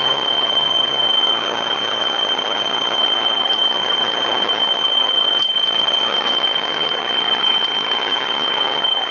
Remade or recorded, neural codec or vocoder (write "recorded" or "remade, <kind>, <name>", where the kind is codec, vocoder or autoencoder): remade, vocoder, HiFi-GAN